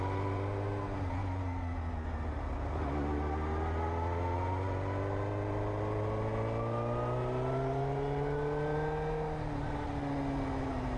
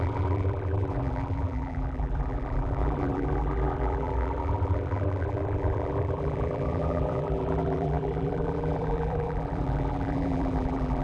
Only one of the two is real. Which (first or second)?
first